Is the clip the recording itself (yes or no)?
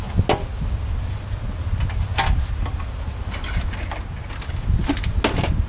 yes